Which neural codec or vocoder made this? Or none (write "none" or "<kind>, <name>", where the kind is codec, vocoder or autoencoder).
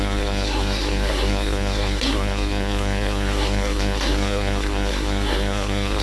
codec, SNAC